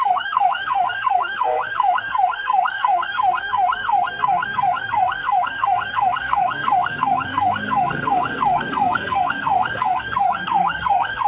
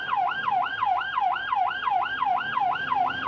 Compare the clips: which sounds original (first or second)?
second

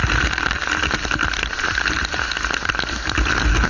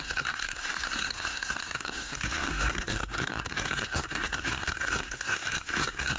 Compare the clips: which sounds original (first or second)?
first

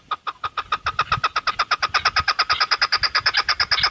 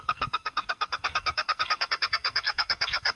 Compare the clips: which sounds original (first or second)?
first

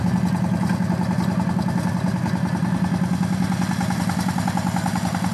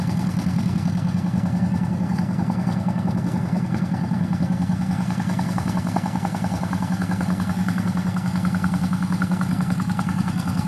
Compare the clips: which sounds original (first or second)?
first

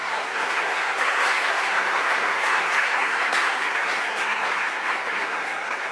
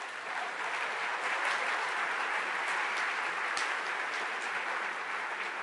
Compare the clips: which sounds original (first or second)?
second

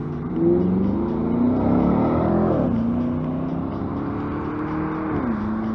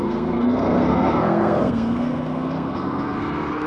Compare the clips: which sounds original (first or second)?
first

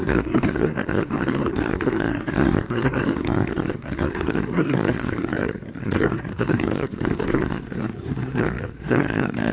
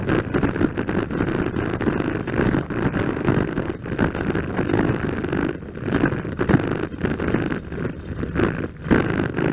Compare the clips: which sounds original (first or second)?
second